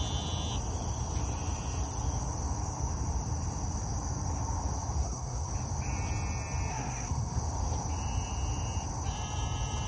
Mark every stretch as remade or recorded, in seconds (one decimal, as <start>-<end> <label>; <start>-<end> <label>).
0.0-5.0 recorded; 5.0-5.5 remade; 5.5-6.7 recorded; 6.7-7.4 remade; 7.4-9.9 recorded